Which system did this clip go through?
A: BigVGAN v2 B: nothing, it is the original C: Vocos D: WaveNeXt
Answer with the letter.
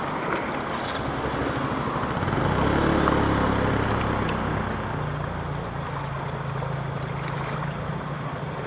B